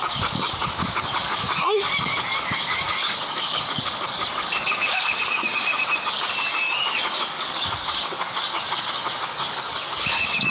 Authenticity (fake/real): fake